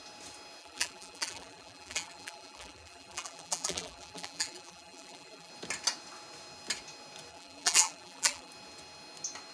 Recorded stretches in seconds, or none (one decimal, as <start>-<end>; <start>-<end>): 0.0-0.6; 5.5-7.3; 8.5-9.5